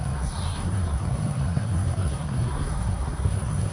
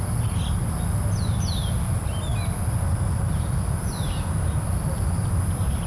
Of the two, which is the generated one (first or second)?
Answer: first